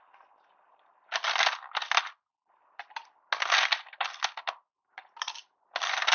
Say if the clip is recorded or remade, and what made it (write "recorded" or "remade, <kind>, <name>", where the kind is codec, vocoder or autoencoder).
recorded